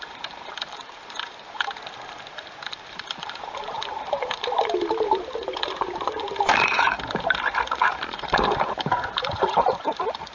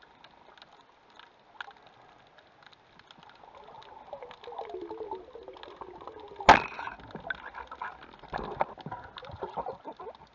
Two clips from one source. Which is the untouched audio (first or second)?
second